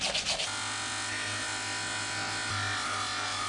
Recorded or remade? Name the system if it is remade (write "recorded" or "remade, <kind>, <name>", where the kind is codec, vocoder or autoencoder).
recorded